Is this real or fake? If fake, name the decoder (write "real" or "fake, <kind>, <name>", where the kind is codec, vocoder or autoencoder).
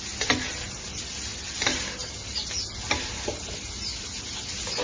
real